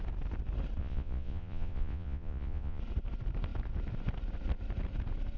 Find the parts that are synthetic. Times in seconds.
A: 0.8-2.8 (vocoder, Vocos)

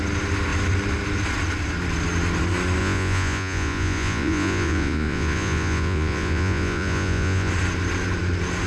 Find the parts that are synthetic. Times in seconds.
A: 2.8-7.5 (vocoder, Vocos)

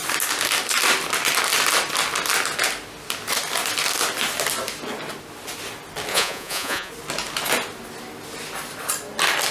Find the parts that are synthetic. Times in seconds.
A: 6.1-6.9 (vocoder, Vocos)